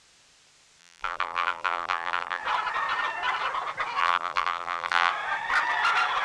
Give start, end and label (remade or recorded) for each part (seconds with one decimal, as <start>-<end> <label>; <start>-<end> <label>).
0.0-0.8 recorded; 0.8-2.4 remade; 2.4-4.0 recorded; 4.0-5.1 remade; 5.1-6.2 recorded